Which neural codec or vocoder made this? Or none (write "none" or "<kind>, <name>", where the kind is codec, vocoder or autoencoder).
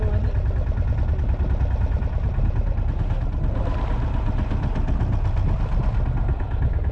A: none